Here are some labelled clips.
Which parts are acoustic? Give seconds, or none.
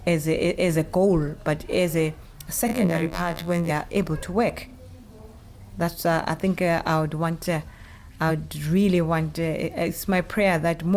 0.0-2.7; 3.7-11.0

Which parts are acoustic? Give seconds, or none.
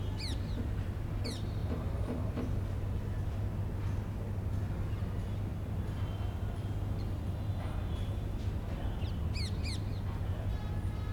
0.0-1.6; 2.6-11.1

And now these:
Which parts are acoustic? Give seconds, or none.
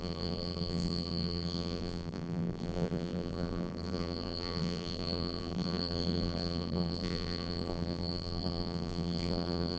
none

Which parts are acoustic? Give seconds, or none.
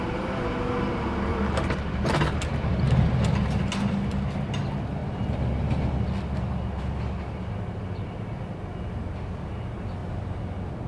0.0-1.3; 1.9-10.9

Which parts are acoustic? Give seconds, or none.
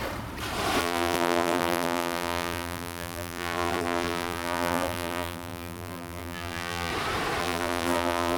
0.0-0.8; 6.9-7.4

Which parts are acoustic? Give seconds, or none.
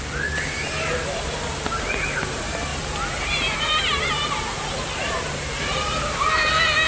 0.0-2.7; 6.5-6.9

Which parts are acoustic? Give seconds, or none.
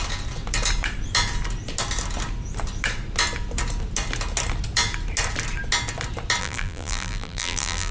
0.0-6.4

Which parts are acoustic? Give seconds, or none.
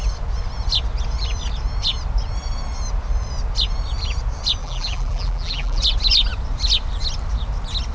0.0-4.6; 5.8-7.9